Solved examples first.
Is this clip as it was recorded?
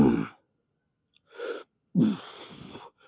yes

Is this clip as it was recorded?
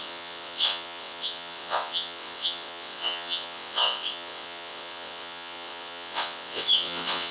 no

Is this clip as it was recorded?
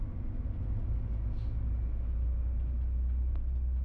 yes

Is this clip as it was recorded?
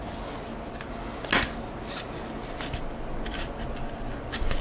yes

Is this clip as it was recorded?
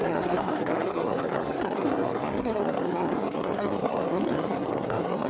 no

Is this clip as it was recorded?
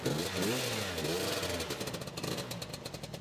yes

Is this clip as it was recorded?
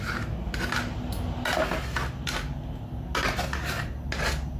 yes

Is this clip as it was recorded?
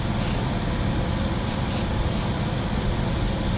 yes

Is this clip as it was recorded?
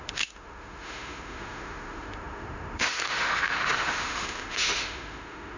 no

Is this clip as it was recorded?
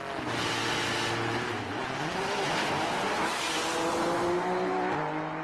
yes